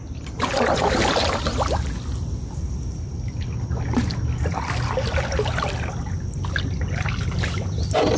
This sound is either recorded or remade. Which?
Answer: recorded